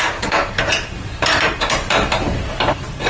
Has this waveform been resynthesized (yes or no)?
yes